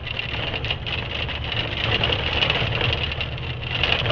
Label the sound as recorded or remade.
recorded